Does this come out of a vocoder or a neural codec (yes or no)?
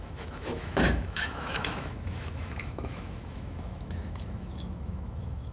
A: yes